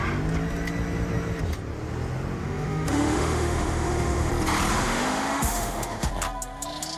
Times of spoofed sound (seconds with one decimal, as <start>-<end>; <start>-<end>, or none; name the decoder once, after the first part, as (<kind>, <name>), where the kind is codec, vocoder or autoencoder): 2.4-4.3 (autoencoder, DAC-VAE); 4.7-6.1